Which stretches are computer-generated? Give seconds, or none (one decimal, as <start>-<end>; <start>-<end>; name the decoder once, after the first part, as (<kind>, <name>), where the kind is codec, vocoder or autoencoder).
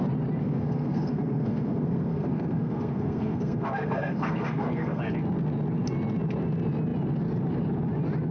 0.4-5.0 (codec, SNAC)